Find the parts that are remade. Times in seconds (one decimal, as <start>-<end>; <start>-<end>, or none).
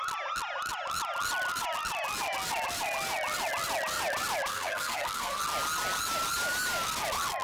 4.5-5.4